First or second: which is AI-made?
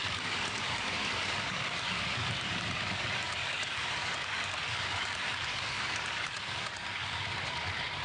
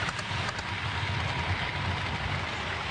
first